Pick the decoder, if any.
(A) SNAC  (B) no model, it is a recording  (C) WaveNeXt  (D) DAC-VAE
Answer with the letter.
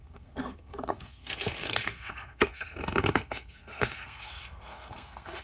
A